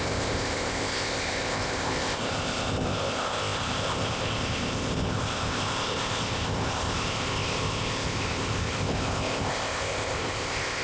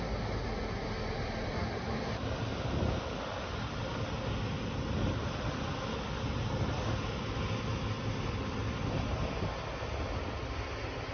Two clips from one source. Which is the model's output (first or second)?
first